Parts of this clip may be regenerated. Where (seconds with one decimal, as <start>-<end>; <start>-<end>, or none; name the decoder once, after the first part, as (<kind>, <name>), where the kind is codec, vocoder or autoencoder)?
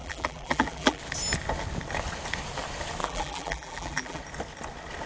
0.0-1.0 (vocoder, BigVGAN v2); 3.0-4.2